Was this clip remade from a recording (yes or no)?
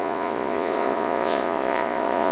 yes